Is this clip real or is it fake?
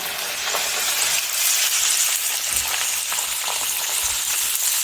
real